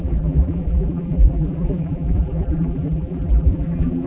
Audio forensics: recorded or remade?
remade